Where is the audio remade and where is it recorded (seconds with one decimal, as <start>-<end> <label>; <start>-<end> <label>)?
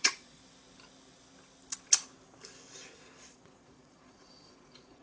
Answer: 0.0-0.4 remade; 0.4-2.9 recorded; 2.9-5.0 remade